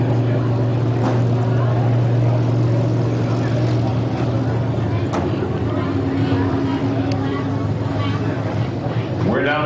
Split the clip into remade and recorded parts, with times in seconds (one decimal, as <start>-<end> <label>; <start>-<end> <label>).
0.0-9.7 recorded